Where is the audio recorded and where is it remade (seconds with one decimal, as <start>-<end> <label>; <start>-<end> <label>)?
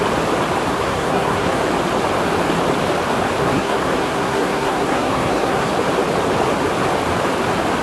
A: 0.0-0.7 recorded; 0.7-1.6 remade; 1.6-3.4 recorded; 3.4-5.7 remade; 5.7-7.8 recorded